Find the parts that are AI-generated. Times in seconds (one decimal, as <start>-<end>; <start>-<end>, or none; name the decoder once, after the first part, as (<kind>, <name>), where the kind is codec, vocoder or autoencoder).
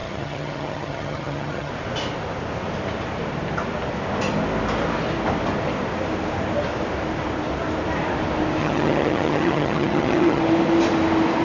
0.0-1.7 (vocoder, HiFi-GAN); 8.6-10.4